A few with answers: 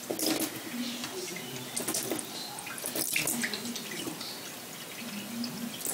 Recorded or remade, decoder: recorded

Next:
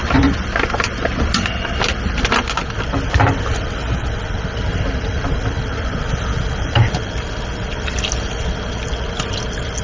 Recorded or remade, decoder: recorded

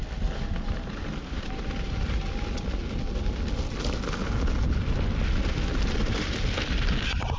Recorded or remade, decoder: recorded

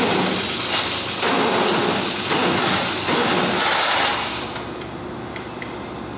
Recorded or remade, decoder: recorded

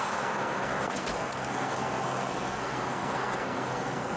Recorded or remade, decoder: remade, codec, SNAC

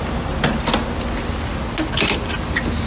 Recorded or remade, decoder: recorded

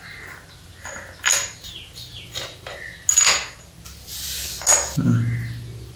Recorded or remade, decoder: recorded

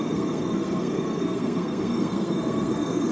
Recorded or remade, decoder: remade, codec, SNAC